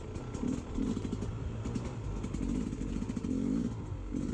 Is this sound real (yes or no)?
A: yes